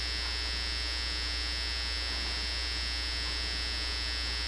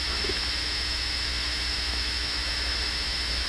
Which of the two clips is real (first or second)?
first